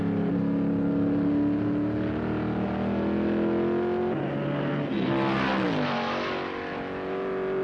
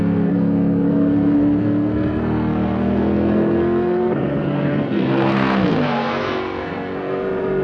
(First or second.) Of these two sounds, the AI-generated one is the second